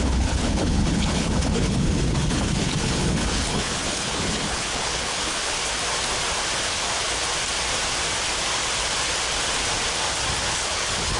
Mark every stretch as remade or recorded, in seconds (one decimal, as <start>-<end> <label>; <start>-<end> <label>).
0.0-5.6 remade; 5.6-10.4 recorded; 10.4-11.2 remade